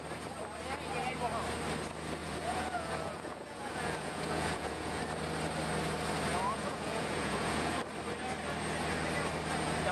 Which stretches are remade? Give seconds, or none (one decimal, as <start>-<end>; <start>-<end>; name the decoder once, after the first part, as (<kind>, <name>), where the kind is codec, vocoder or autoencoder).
2.2-5.0 (vocoder, Vocos); 6.3-7.8